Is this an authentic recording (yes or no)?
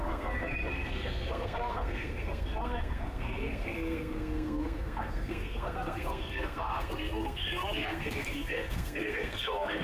no